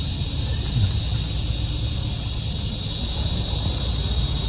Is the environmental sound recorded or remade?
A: recorded